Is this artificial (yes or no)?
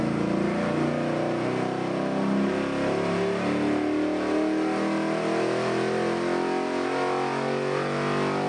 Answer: no